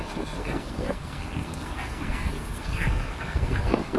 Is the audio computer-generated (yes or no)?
yes